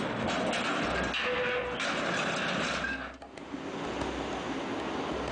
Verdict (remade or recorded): recorded